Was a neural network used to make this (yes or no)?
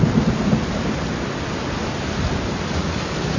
no